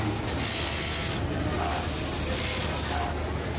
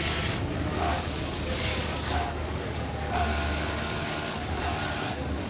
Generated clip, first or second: second